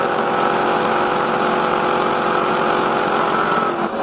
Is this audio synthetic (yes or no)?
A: no